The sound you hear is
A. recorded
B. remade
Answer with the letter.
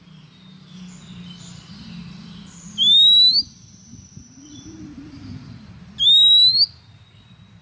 A